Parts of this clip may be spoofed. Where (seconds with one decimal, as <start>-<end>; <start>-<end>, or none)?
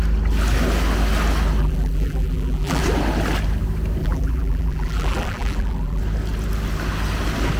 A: 1.6-2.8; 4.0-6.0